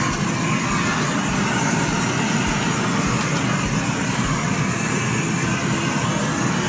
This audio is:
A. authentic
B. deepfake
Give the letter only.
A